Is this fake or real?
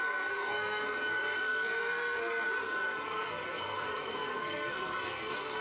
fake